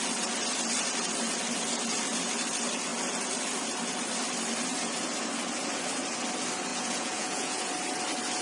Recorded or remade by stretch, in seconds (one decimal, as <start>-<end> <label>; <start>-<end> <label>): 0.0-6.7 recorded; 6.7-7.7 remade; 7.7-8.4 recorded